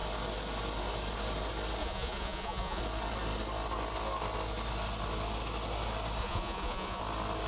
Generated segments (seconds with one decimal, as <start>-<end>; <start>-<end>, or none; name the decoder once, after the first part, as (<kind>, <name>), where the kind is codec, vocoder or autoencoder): 1.8-2.8 (vocoder, Vocos); 6.2-7.0